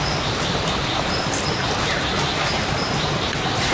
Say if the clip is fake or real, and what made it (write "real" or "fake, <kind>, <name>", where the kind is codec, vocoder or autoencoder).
real